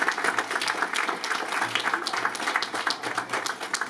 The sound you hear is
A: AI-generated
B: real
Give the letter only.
B